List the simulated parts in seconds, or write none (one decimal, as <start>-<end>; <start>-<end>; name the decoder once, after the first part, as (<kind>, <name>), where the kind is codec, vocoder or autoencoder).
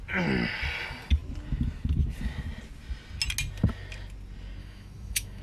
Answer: 4.6-5.4 (autoencoder, DAC-VAE)